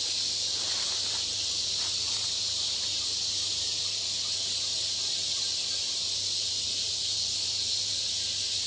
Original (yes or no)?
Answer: yes